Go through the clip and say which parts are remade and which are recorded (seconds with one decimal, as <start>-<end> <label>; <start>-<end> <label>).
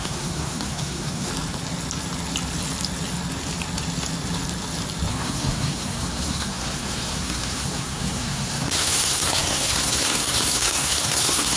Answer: 0.0-1.3 remade; 1.3-5.1 recorded; 5.1-11.6 remade